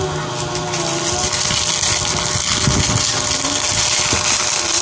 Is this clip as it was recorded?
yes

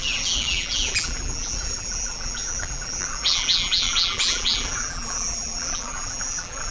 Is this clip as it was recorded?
no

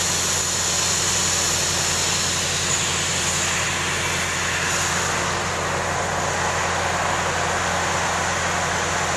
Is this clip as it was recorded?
yes